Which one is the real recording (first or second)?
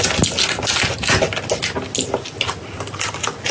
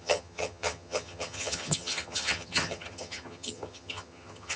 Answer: first